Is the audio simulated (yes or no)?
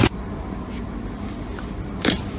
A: no